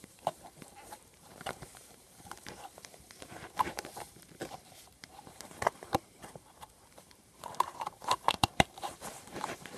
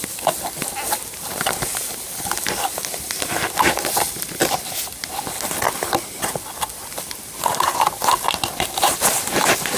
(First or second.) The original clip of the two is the second